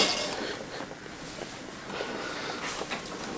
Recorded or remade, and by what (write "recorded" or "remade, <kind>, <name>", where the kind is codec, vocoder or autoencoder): recorded